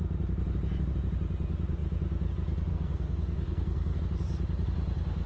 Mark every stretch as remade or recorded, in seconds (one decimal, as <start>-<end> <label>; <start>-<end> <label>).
0.0-2.7 recorded; 2.7-4.0 remade; 4.0-5.3 recorded